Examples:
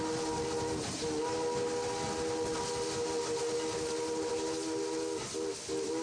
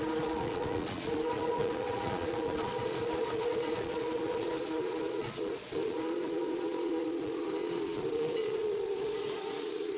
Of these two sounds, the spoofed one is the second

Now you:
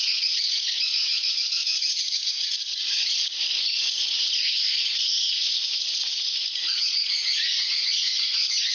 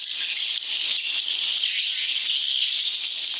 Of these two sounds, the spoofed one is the first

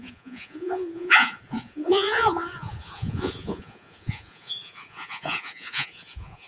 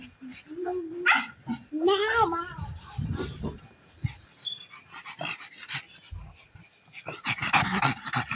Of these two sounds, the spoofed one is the first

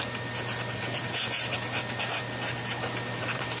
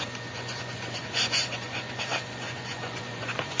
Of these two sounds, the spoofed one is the second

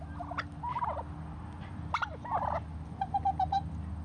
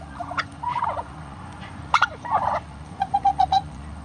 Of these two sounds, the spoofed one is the second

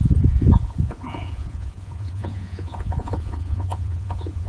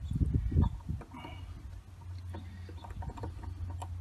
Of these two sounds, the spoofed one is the first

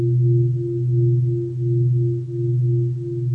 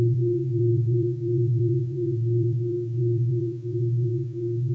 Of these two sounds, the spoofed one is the second